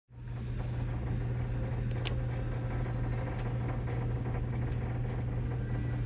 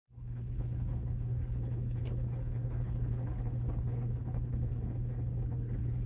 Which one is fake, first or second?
second